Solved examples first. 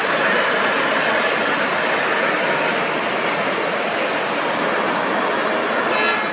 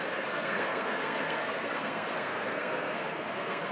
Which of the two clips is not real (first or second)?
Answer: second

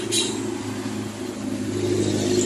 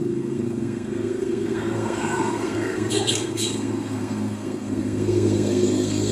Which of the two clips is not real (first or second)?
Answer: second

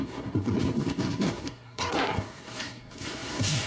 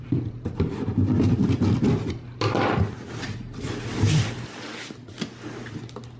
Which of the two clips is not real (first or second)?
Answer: first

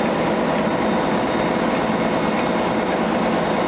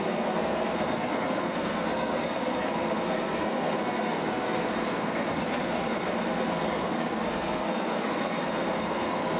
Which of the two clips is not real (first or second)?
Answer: second